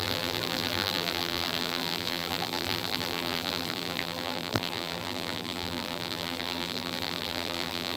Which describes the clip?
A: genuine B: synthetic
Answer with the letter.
B